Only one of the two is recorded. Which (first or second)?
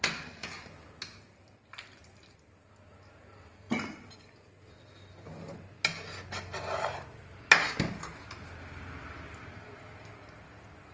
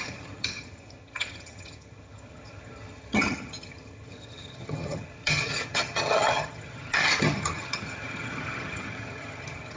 first